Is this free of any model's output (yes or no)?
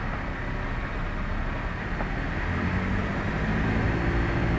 yes